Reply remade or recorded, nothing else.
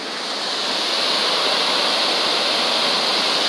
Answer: recorded